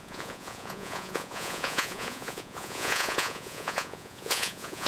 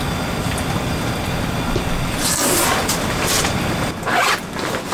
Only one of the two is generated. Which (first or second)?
first